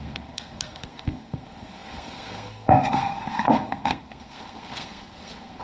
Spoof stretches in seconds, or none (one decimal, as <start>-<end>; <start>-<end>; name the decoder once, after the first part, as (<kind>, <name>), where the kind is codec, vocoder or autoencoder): 0.0-5.6 (codec, SNAC)